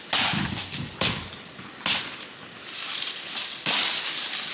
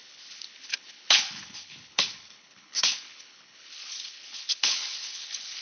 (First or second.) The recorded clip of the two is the first